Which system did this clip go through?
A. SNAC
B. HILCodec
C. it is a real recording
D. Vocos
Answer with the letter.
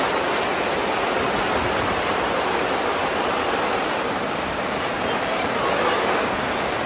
C